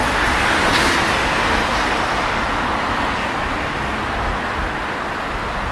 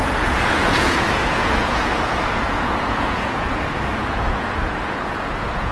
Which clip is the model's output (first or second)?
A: second